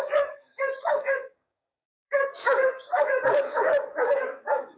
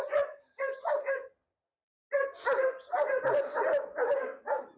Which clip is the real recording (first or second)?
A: second